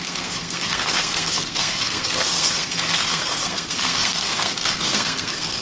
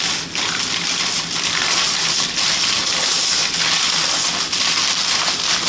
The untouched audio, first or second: second